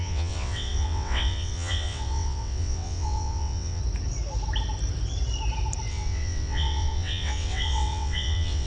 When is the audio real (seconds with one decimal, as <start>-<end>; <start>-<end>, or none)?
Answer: 3.8-5.9